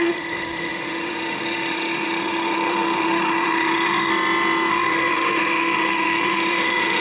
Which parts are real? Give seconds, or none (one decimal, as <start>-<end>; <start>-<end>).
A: 4.1-4.7